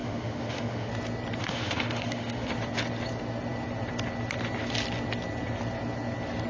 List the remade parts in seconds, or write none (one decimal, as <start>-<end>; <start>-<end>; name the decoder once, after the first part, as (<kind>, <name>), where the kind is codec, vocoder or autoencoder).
0.0-0.9 (autoencoder, DAC-VAE); 1.4-2.5